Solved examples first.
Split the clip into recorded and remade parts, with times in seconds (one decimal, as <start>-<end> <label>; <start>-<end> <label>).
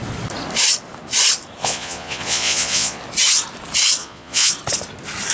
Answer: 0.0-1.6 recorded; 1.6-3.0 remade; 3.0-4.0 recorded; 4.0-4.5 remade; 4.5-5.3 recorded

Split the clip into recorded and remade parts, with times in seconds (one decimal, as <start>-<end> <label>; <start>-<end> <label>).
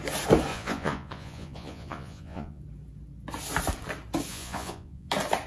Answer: 0.0-0.5 recorded; 0.5-2.6 remade; 2.6-4.3 recorded; 4.3-5.1 remade; 5.1-5.5 recorded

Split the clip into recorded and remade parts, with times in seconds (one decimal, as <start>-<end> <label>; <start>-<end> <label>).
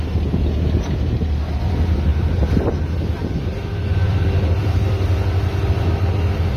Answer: 0.0-6.6 recorded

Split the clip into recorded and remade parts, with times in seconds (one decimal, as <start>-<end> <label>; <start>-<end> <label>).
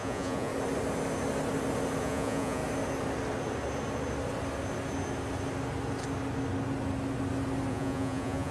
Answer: 0.0-0.5 remade; 0.5-2.0 recorded; 2.0-2.6 remade; 2.6-7.7 recorded; 7.7-8.5 remade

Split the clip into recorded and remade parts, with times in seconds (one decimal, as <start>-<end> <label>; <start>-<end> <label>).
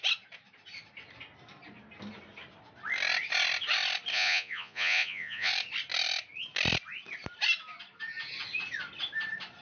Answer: 0.0-4.1 recorded; 4.1-5.5 remade; 5.5-9.6 recorded